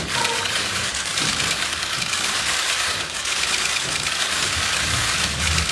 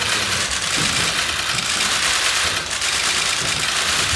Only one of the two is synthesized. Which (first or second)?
first